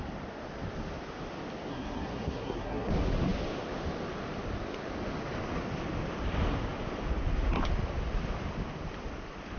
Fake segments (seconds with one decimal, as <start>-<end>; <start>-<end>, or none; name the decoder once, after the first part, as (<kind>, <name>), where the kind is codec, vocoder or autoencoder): 1.7-2.9 (codec, SNAC)